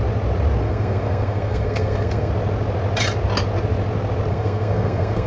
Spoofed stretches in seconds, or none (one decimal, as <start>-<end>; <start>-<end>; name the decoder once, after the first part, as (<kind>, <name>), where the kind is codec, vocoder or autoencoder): 0.6-2.3 (codec, SNAC); 4.3-5.3